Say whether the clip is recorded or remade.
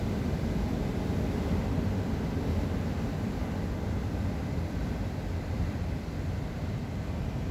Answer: recorded